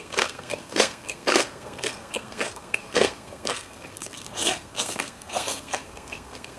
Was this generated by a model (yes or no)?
yes